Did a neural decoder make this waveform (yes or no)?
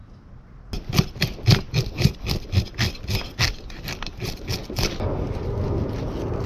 no